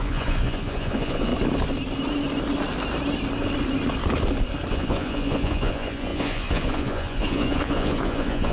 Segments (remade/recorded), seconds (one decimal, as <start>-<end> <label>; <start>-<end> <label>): 0.0-1.3 remade; 1.3-4.7 recorded; 4.7-8.5 remade